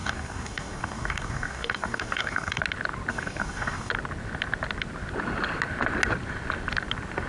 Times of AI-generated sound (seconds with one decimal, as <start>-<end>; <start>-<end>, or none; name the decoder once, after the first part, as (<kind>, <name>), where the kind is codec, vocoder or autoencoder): 0.0-2.6 (codec, DAC); 3.1-3.9